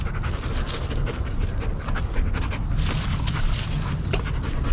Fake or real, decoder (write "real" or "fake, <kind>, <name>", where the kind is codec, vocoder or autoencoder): real